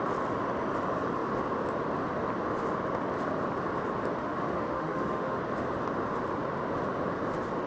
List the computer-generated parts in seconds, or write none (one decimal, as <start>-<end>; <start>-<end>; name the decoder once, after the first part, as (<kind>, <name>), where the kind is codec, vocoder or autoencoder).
4.2-5.4 (autoencoder, DAC-VAE)

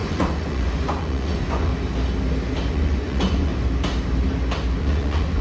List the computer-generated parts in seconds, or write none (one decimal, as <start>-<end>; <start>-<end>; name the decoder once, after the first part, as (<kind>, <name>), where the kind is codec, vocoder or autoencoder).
0.0-1.7 (vocoder, Vocos); 2.7-3.5; 4.8-5.4